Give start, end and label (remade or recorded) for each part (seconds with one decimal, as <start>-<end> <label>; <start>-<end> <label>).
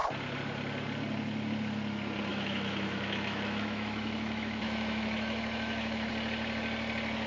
0.0-2.3 recorded; 2.3-6.1 remade; 6.1-7.3 recorded